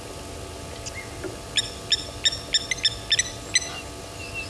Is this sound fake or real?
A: real